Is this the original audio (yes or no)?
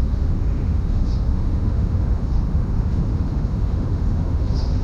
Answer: no